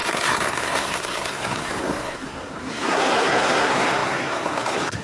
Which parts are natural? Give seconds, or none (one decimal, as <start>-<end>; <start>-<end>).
none